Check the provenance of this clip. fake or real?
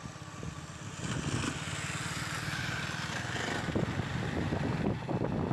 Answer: real